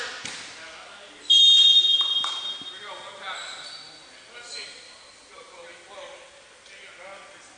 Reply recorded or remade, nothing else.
recorded